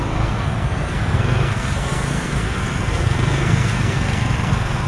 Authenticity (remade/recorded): remade